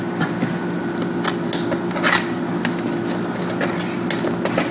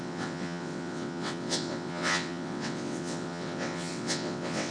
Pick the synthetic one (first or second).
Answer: second